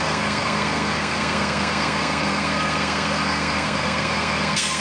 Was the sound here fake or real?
fake